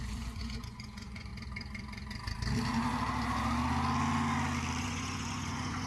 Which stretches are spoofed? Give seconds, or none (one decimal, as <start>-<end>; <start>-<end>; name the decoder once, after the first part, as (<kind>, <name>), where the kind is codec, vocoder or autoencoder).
0.0-1.3 (vocoder, Vocos); 4.8-5.9